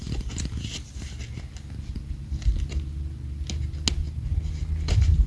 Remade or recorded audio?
recorded